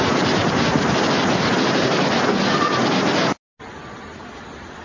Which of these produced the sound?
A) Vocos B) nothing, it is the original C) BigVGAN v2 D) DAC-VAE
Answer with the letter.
B